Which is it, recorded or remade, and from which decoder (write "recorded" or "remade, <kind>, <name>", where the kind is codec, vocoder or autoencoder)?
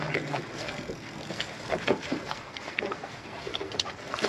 remade, codec, SNAC